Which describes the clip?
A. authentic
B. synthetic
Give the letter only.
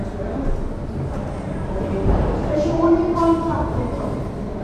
A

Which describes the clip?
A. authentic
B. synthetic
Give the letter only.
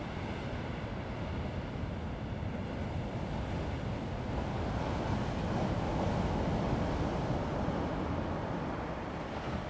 A